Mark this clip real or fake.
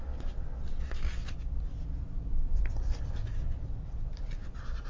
real